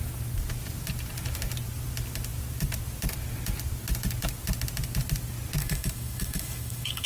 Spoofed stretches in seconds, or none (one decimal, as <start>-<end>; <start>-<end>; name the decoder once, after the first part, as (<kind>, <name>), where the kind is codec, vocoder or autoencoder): 5.6-7.1 (autoencoder, DAC-VAE)